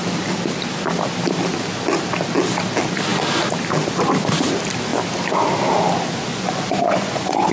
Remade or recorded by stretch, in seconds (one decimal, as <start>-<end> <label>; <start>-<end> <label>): 0.0-6.3 recorded; 6.3-7.5 remade

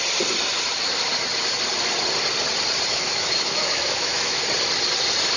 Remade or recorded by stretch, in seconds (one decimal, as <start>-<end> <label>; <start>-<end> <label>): 0.0-2.9 recorded; 2.9-4.4 remade; 4.4-5.4 recorded

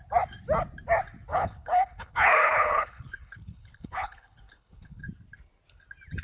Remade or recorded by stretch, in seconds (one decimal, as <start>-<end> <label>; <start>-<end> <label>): 0.0-1.3 recorded; 1.3-5.0 remade; 5.0-6.2 recorded

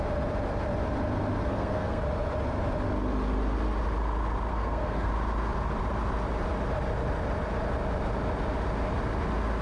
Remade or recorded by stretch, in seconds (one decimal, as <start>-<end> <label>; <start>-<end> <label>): 0.0-1.4 recorded; 1.4-2.0 remade; 2.0-4.5 recorded; 4.5-5.1 remade; 5.1-9.6 recorded

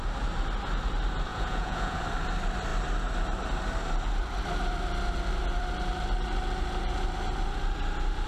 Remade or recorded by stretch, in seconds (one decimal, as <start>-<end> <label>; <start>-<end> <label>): 0.0-1.3 recorded; 1.3-2.0 remade; 2.0-8.3 recorded

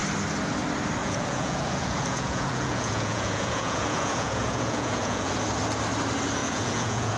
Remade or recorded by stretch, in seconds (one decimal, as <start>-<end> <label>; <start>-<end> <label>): 0.0-1.0 recorded; 1.0-5.3 remade; 5.3-6.4 recorded; 6.4-7.2 remade

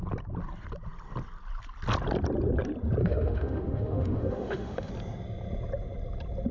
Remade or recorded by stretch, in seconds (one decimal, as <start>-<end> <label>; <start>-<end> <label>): 0.0-3.0 recorded; 3.0-4.9 remade; 4.9-6.5 recorded

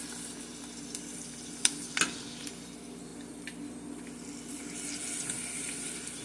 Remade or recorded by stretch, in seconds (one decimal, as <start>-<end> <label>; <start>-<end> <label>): 0.0-6.2 recorded